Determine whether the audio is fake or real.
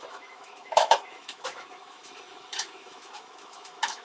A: fake